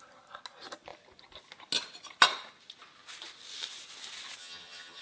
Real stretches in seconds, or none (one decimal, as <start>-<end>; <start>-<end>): 0.0-4.4